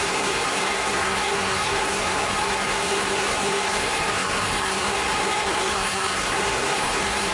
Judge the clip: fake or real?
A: fake